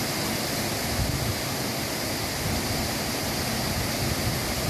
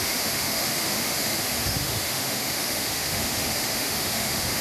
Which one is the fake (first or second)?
second